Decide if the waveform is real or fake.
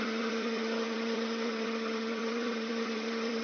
fake